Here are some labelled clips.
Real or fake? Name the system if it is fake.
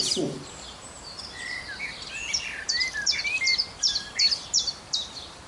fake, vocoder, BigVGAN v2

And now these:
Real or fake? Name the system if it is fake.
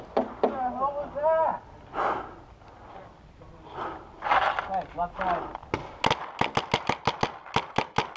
real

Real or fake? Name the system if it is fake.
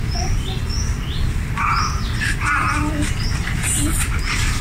real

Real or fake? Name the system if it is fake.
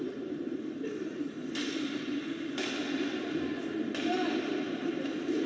real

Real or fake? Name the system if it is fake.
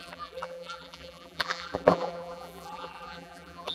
fake, vocoder, BigVGAN v2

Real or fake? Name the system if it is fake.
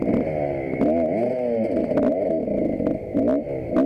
real